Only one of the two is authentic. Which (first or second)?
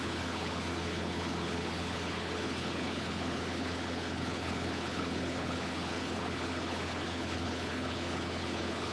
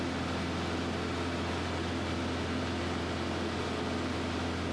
second